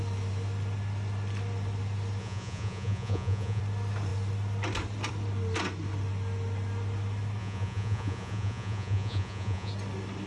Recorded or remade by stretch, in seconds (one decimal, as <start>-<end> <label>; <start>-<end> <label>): 0.0-2.2 recorded; 2.2-3.6 remade; 3.6-7.4 recorded; 7.4-9.7 remade; 9.7-10.3 recorded